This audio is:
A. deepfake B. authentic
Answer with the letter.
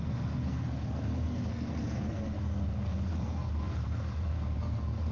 A